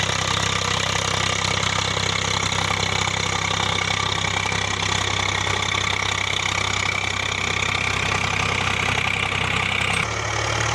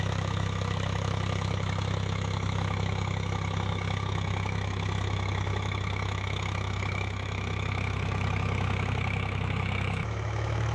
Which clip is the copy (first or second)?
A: second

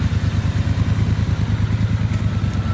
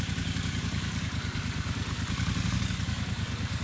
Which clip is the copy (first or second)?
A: second